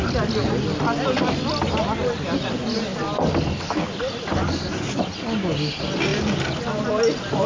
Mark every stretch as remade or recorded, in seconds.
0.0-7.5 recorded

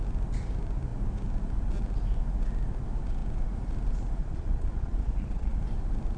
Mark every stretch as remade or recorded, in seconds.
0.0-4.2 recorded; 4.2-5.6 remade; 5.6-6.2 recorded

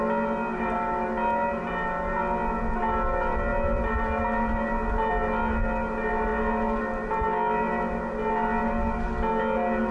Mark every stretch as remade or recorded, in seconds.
0.0-9.9 recorded

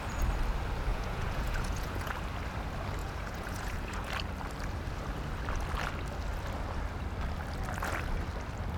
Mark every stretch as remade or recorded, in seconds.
0.0-0.9 recorded; 0.9-2.1 remade; 2.1-3.0 recorded; 3.0-4.1 remade; 4.1-8.8 recorded